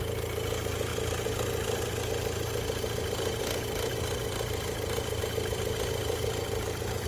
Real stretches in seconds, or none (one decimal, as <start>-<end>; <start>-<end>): 0.9-5.2